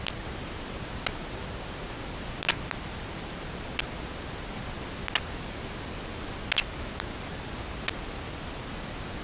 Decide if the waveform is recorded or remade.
recorded